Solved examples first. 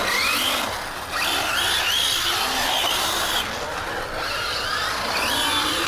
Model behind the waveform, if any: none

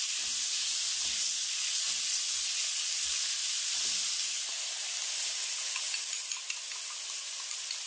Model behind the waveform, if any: none